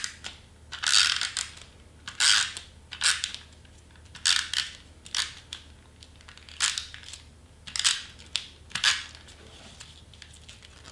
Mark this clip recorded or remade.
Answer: recorded